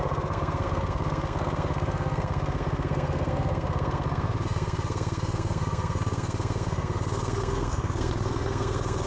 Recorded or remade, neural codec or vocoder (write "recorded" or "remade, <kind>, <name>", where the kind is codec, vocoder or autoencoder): remade, codec, SNAC